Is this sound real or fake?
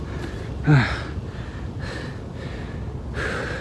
real